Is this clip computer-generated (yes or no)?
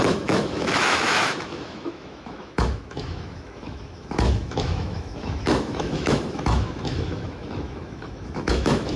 yes